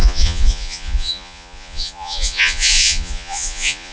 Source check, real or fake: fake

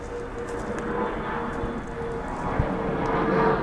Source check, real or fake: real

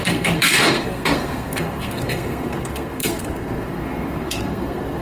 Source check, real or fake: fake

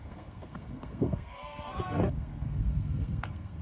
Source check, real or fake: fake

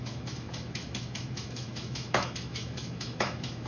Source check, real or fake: fake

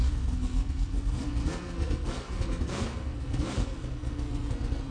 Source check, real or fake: fake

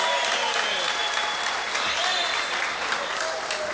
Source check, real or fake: real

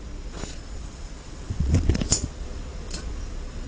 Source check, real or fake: fake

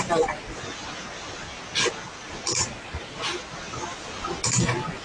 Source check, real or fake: real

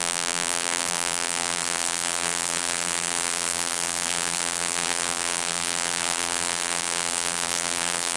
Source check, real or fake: fake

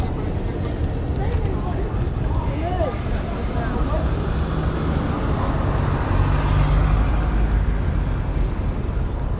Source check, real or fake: real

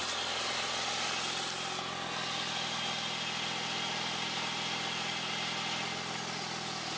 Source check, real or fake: real